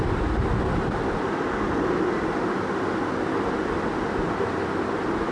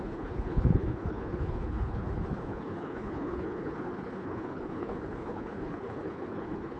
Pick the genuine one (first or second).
first